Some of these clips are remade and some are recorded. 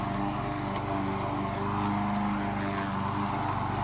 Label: recorded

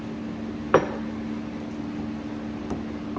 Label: recorded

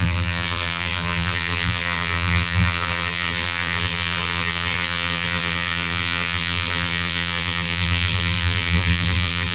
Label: remade